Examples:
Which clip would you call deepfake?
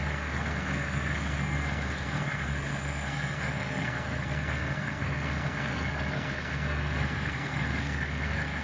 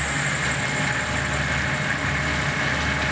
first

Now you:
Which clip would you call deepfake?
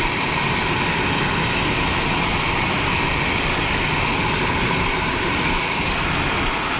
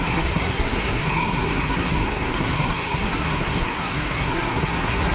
second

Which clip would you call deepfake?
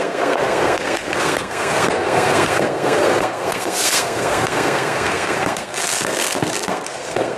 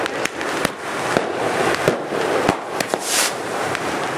first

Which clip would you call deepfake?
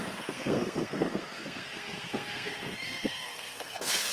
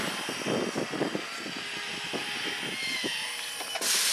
first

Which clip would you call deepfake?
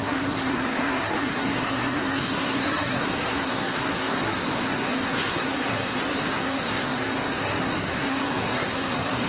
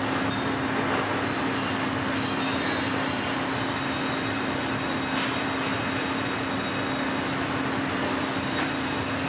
first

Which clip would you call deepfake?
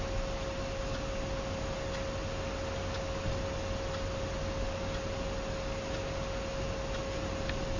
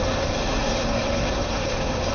second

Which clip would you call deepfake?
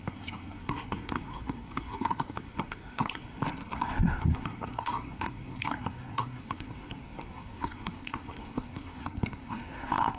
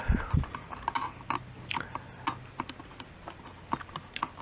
first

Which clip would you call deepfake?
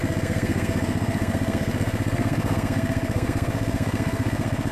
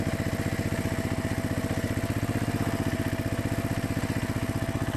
first